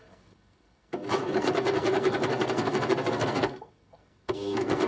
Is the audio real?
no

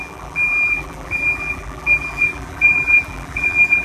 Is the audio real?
no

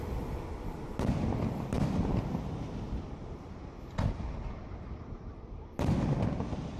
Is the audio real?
yes